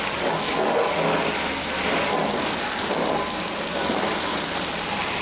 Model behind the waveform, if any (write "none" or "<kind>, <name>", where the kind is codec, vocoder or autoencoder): none